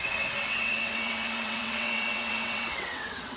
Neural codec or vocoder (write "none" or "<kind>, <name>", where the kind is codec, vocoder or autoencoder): vocoder, WaveNeXt